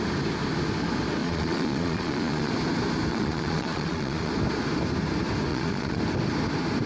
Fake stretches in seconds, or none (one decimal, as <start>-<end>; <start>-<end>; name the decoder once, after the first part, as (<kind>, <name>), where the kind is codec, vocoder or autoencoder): 1.2-2.5 (vocoder, Vocos); 3.1-4.3; 5.5-6.0